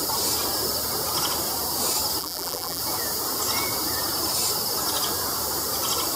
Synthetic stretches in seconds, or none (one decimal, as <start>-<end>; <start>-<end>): 2.2-2.8

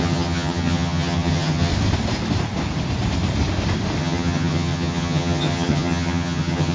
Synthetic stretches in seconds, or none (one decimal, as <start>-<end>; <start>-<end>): 0.0-1.7; 4.0-6.7

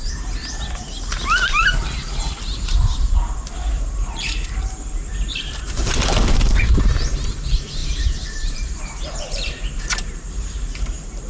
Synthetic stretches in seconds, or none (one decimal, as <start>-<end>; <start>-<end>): 0.0-0.4; 3.7-11.3